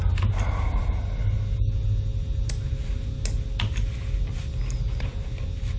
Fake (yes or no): no